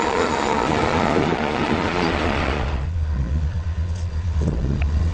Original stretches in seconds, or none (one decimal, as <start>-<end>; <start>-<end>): none